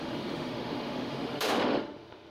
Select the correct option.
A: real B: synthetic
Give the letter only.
B